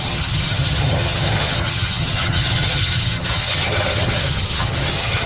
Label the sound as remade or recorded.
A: remade